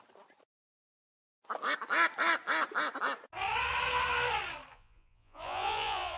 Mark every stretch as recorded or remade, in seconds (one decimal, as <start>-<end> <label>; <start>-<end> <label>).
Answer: 0.0-4.7 recorded; 4.7-6.2 remade